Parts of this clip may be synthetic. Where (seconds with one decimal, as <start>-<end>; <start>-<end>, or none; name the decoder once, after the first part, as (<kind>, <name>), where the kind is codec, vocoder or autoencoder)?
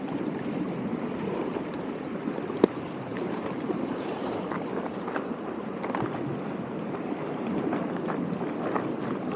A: 3.1-4.5 (vocoder, BigVGAN v2)